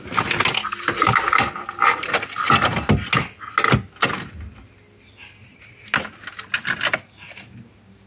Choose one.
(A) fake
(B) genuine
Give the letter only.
B